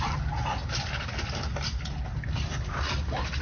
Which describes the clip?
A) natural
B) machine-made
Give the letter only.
A